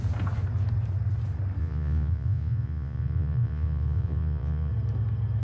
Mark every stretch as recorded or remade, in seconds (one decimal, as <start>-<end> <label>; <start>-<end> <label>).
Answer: 0.0-1.6 recorded; 1.6-4.7 remade; 4.7-5.4 recorded